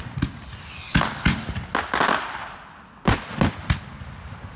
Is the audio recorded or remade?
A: recorded